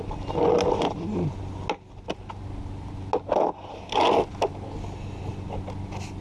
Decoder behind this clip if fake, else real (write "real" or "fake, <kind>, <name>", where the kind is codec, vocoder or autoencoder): real